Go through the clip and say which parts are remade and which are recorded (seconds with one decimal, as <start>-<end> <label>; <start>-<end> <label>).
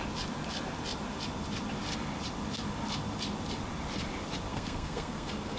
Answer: 0.0-4.5 recorded; 4.5-5.6 remade